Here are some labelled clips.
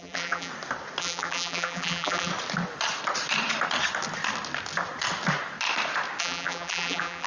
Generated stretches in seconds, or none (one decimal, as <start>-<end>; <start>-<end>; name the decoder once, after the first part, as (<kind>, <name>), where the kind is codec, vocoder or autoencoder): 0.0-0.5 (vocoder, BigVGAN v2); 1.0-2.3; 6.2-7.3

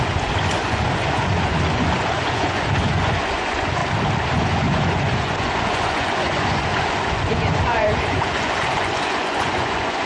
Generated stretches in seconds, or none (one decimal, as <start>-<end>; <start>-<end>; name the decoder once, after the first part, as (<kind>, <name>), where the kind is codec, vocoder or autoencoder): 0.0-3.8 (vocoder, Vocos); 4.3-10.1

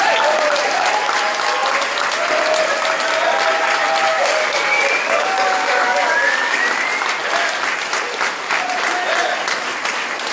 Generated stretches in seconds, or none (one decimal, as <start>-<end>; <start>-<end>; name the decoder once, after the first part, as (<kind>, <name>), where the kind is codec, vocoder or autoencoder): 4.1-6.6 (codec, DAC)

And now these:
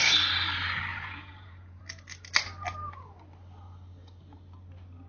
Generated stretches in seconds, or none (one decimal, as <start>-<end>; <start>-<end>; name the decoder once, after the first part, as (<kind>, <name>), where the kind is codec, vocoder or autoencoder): 0.9-1.8 (vocoder, Vocos)